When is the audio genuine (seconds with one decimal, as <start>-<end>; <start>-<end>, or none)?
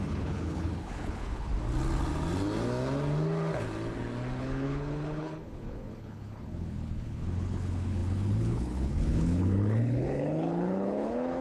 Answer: 1.5-4.4